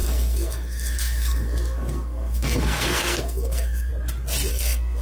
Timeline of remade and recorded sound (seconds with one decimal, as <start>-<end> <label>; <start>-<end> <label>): 0.0-3.9 remade; 3.9-4.5 recorded; 4.5-5.0 remade